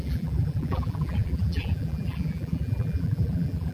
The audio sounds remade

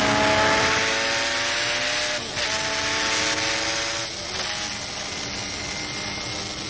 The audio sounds recorded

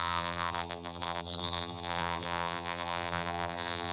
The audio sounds remade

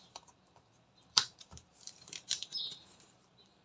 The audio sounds remade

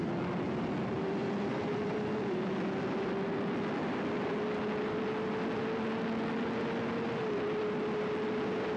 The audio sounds recorded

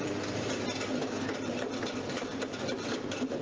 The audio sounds recorded